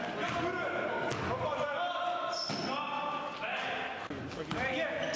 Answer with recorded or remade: recorded